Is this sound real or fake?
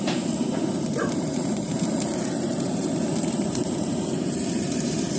fake